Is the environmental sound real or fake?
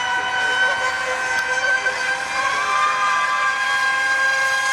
real